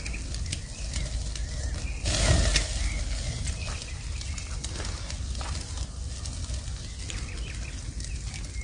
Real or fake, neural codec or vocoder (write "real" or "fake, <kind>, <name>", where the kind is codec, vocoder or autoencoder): real